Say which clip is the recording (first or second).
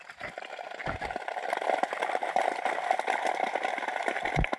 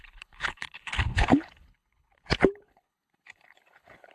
first